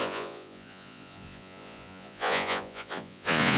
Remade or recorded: remade